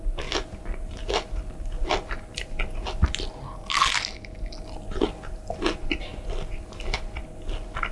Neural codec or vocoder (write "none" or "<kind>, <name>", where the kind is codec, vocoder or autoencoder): none